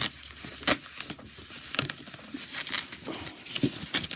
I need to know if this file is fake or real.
real